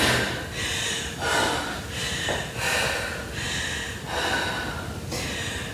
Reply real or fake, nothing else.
real